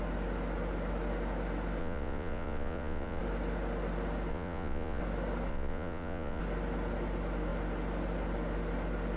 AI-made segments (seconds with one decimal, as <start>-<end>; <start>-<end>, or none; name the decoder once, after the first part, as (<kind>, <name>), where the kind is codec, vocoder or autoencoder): 1.8-3.2 (vocoder, Vocos); 4.3-5.0; 5.5-6.4

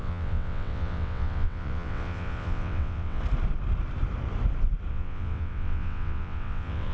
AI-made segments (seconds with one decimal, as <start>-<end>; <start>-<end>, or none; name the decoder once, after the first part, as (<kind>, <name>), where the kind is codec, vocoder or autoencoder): 0.0-3.2 (vocoder, WaveNeXt); 4.9-6.9

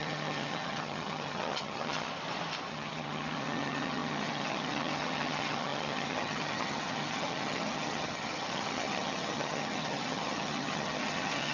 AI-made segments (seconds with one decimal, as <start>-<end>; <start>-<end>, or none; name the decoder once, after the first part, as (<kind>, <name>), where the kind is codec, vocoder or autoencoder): 0.0-2.1 (vocoder, HiFi-GAN); 2.7-11.5

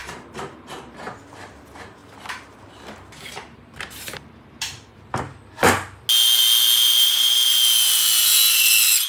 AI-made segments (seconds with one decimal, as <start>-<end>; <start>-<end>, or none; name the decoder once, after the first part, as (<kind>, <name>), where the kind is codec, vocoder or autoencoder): 0.0-0.6 (vocoder, BigVGAN v2); 2.0-5.2

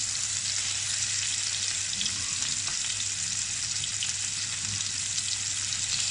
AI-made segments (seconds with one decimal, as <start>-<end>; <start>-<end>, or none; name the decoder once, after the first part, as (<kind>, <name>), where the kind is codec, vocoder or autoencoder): none

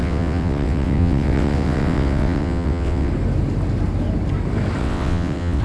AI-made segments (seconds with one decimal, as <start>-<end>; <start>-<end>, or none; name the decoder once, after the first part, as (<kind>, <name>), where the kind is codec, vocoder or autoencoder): 0.0-3.1 (vocoder, WaveNeXt); 4.8-5.6

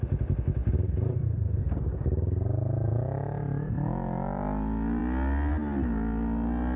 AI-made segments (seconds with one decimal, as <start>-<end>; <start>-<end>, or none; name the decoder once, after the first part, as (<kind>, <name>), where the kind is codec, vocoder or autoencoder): 0.6-1.6 (vocoder, BigVGAN v2)

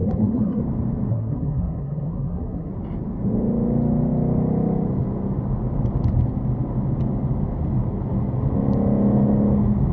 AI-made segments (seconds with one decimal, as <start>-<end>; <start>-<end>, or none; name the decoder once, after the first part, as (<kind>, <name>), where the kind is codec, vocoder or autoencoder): 0.0-0.6 (codec, SNAC); 1.1-2.7